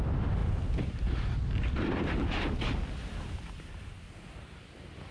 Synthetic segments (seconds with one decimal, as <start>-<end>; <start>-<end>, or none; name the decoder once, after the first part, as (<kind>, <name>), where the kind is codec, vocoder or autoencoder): none